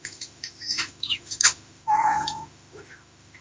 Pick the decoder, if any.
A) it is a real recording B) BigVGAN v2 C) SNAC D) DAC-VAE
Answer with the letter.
D